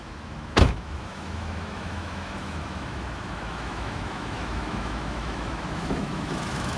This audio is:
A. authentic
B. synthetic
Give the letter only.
B